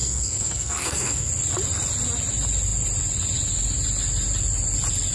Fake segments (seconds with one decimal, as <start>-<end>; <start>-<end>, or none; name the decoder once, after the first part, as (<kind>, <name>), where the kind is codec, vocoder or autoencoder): 0.0-1.3 (codec, SNAC)

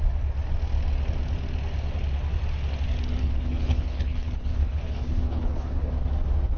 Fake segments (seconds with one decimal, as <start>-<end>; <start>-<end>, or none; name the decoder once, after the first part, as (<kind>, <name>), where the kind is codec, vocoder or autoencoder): 3.2-5.9 (codec, HILCodec)

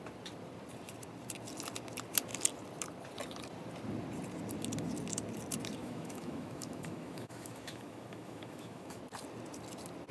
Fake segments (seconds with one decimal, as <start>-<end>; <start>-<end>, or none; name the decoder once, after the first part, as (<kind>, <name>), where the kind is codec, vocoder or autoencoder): 5.8-9.0 (autoencoder, DAC-VAE)

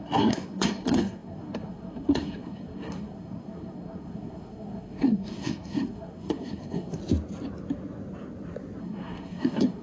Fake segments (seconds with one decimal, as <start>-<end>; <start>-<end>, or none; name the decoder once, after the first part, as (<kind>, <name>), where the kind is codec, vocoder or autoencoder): 0.0-7.0 (codec, SNAC); 8.8-9.8

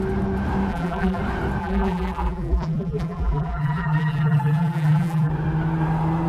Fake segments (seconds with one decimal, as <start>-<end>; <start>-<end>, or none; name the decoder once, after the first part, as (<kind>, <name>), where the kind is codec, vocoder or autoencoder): 0.7-1.2 (vocoder, BigVGAN v2); 1.6-5.3

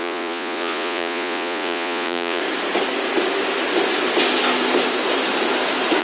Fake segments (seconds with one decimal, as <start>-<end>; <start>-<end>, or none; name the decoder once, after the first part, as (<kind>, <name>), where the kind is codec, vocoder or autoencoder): 0.0-2.4 (vocoder, Vocos)

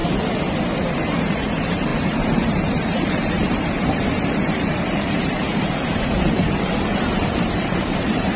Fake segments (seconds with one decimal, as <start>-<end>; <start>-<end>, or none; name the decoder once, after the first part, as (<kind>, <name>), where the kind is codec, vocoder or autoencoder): 1.2-8.4 (vocoder, BigVGAN v2)

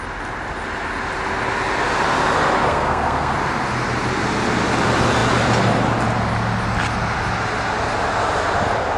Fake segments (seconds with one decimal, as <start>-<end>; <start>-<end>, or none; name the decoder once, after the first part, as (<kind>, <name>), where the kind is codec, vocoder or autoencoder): 2.7-3.3 (codec, SNAC)